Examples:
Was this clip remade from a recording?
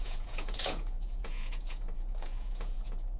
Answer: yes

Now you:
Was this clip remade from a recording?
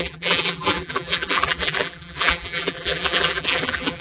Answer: yes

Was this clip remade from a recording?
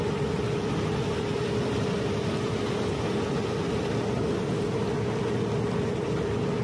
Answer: no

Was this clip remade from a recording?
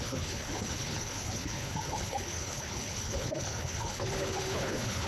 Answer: yes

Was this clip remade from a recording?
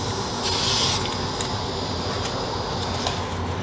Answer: no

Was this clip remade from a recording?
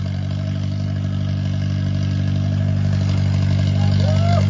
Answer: no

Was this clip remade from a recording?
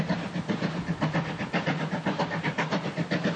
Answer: no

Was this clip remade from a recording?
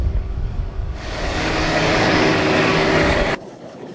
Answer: yes